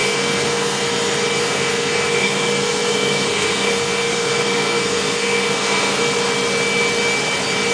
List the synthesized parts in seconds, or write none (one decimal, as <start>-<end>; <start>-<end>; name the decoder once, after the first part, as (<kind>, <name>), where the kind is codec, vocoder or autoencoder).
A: 0.0-0.8 (codec, SNAC); 1.4-6.0